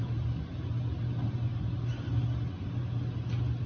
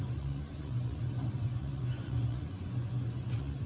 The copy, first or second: second